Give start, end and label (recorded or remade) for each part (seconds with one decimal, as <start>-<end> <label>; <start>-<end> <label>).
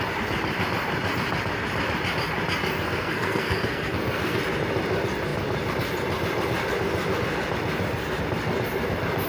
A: 0.0-2.6 recorded; 2.6-4.4 remade; 4.4-9.3 recorded